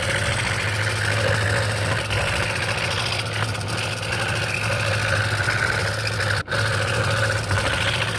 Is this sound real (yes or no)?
yes